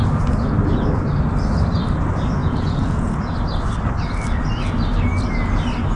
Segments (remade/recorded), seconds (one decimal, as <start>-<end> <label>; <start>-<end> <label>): 0.0-2.4 recorded; 2.4-3.3 remade; 3.3-6.0 recorded